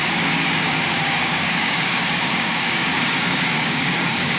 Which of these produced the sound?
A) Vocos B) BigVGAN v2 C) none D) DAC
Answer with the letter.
D